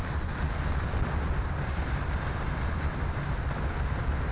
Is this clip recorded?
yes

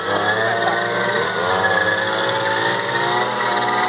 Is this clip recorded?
yes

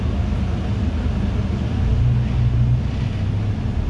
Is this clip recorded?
yes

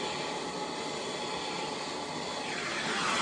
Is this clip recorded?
yes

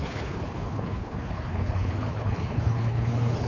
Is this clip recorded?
no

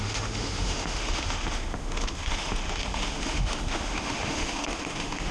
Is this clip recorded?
no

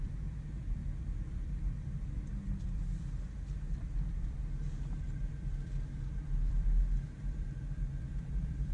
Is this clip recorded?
no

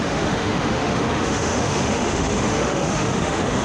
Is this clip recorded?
no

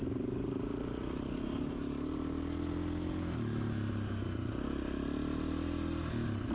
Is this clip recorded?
yes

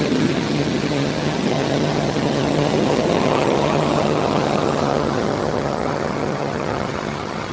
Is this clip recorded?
no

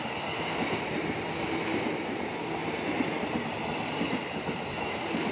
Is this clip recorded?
yes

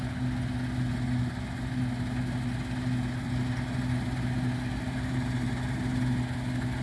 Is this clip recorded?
yes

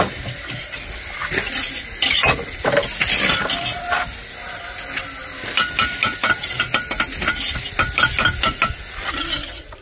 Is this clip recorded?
yes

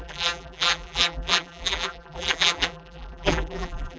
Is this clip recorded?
no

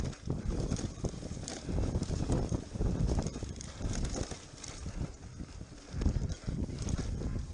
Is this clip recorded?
no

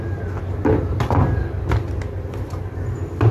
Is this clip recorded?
yes